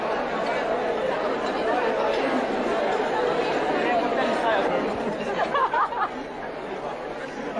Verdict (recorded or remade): recorded